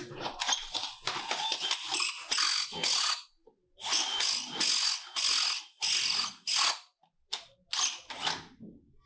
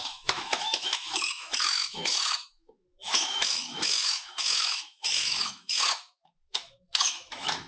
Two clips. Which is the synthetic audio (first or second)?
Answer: second